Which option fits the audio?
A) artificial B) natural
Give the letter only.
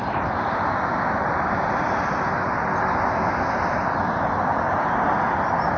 B